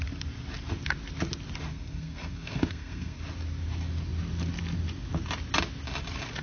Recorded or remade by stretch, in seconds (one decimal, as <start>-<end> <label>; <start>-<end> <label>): 0.0-1.7 recorded; 1.7-3.2 remade; 3.2-6.4 recorded